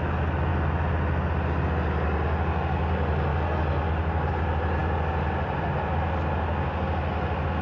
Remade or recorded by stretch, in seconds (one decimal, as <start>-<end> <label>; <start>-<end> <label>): 0.0-7.6 recorded